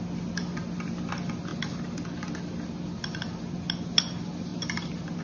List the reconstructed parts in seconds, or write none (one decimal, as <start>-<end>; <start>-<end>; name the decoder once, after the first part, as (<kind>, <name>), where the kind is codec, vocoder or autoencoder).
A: none